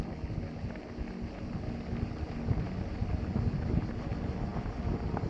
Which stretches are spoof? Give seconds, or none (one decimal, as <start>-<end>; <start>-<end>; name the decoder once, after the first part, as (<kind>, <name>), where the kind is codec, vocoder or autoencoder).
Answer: none